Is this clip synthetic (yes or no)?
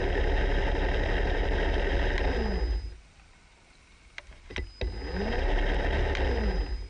no